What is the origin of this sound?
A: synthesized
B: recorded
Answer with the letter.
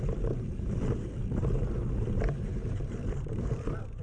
A